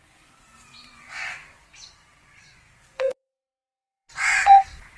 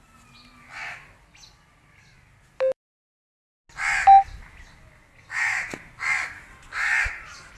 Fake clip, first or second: first